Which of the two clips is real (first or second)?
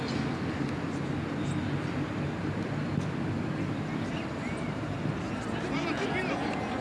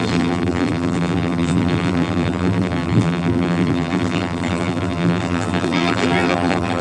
first